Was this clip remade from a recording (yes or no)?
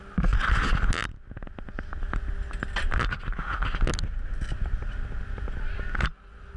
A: no